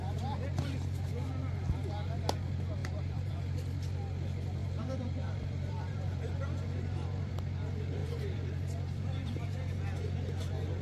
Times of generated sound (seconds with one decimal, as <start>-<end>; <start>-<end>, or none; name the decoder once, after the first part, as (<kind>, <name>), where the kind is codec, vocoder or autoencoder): 2.8-3.3 (vocoder, BigVGAN v2); 4.6-7.3; 8.0-10.4